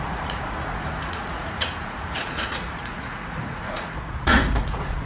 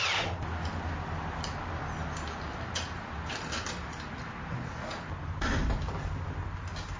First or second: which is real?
second